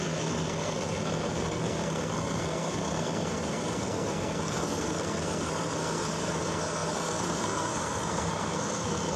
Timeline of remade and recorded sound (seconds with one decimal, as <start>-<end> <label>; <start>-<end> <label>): 0.0-9.2 remade